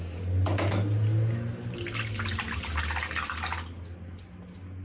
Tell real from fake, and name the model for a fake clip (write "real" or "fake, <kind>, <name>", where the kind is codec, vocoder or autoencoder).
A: real